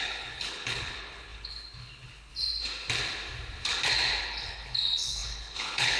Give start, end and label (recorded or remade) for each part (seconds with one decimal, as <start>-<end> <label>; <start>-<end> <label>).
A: 0.0-2.3 remade; 2.3-4.2 recorded; 4.2-6.0 remade